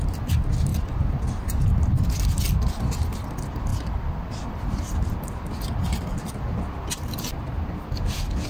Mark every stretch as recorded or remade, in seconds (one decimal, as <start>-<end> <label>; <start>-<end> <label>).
0.0-8.5 recorded